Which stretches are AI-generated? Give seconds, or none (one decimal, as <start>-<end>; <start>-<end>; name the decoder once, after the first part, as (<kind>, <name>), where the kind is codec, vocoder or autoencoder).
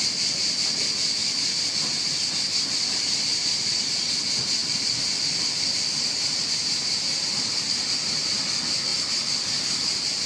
1.2-1.9 (vocoder, BigVGAN v2); 4.6-8.5